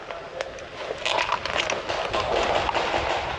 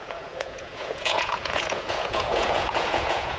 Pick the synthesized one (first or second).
second